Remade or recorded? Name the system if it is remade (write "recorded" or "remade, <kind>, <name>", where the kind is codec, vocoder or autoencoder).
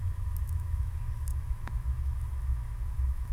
remade, autoencoder, DAC-VAE